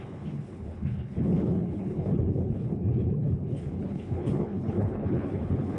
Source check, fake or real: fake